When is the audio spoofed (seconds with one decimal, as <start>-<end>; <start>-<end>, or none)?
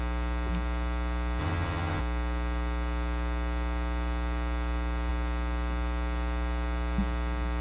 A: 1.4-2.0